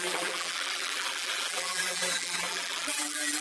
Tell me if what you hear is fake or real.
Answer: fake